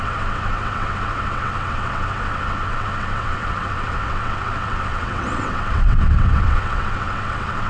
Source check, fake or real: fake